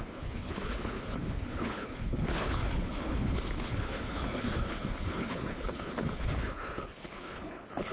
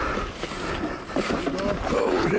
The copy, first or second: first